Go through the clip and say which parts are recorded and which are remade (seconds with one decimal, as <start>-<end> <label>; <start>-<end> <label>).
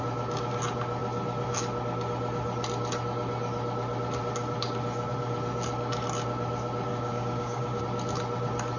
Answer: 0.0-6.9 recorded; 6.9-7.8 remade; 7.8-8.8 recorded